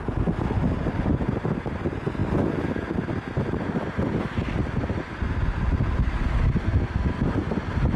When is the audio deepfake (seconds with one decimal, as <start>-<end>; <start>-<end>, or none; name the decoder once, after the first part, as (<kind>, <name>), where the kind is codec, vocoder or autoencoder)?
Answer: none